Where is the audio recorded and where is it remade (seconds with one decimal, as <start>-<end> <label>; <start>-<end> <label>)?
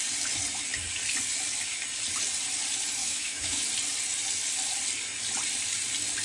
0.0-3.0 recorded; 3.0-3.6 remade; 3.6-6.2 recorded